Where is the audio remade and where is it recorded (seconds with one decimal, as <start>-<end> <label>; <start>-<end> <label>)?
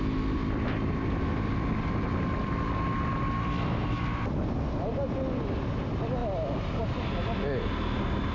0.0-8.3 recorded